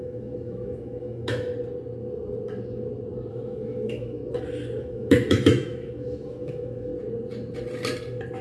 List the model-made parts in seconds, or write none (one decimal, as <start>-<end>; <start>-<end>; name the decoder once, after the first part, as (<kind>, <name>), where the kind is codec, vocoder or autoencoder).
0.0-1.5 (autoencoder, DAC-VAE); 3.3-4.2; 4.8-6.9